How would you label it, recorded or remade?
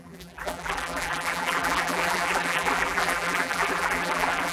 remade